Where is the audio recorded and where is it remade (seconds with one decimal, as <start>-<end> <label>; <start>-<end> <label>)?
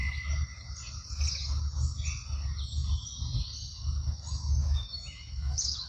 0.0-4.6 recorded; 4.6-5.9 remade